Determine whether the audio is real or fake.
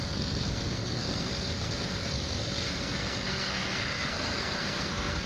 fake